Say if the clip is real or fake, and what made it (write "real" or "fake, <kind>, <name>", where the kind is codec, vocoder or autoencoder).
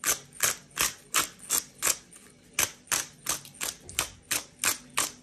real